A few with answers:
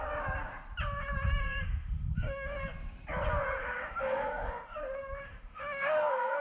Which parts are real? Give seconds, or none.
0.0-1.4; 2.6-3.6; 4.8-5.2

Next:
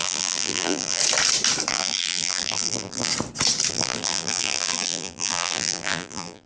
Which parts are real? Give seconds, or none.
1.0-1.7; 3.1-3.7

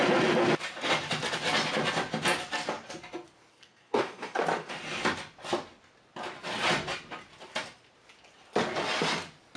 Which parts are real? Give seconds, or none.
0.0-3.5; 4.4-9.6

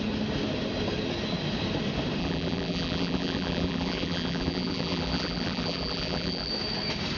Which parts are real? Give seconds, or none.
0.0-2.2; 6.5-7.2

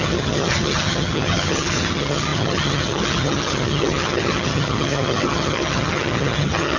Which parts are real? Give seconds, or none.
none

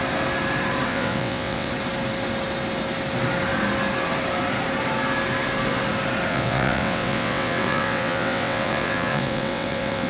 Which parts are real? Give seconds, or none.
0.0-0.9; 1.7-6.3

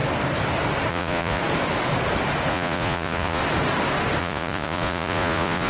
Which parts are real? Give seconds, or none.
0.0-0.9; 1.4-2.5; 3.4-4.2